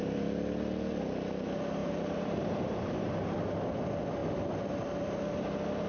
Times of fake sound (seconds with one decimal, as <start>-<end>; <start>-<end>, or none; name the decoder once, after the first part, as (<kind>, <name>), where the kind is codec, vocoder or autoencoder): 1.8-3.1 (vocoder, BigVGAN v2)